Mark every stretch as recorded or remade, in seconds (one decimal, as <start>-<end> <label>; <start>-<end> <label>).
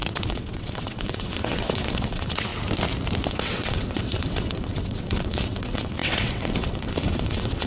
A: 0.0-2.5 remade; 2.5-3.3 recorded; 3.3-7.7 remade